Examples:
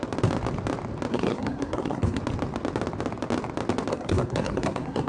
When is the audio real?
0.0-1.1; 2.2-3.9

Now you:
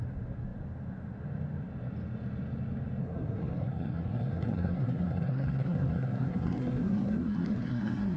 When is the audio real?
0.0-3.0

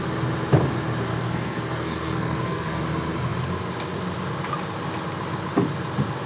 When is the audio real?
0.0-1.1; 2.8-6.3

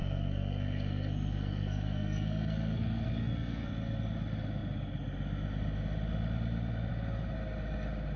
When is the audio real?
3.7-8.2

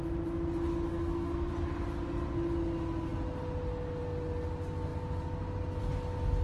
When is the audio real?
0.0-0.9; 1.5-6.4

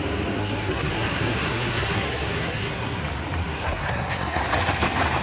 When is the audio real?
0.0-0.4; 3.0-3.4; 4.4-5.2

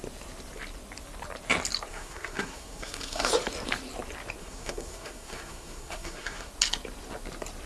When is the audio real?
0.0-1.9; 3.3-4.4; 6.5-7.7

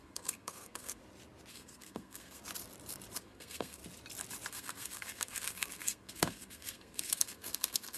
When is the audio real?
1.0-1.5; 2.4-3.2; 3.8-4.5